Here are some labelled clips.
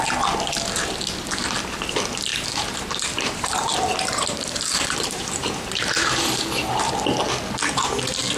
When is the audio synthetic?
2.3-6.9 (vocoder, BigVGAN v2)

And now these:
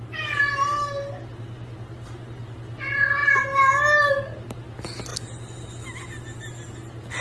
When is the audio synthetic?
none

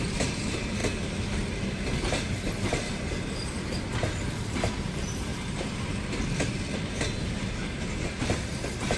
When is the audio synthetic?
0.0-0.8 (vocoder, BigVGAN v2); 4.7-5.3; 8.2-9.0

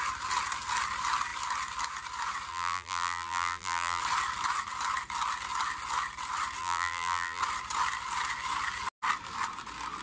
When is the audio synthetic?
2.5-4.0 (vocoder, BigVGAN v2); 6.6-7.4

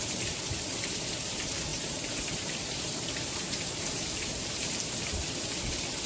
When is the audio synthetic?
1.7-4.7 (vocoder, BigVGAN v2)